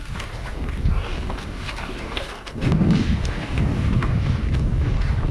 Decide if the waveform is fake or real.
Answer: fake